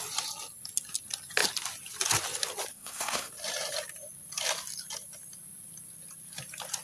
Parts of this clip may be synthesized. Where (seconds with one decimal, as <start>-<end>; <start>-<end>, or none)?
2.7-3.3